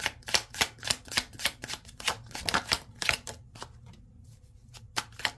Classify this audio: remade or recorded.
recorded